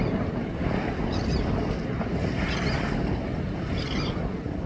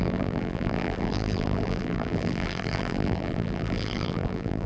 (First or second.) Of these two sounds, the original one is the first